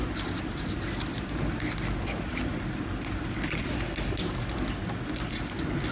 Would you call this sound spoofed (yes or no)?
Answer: no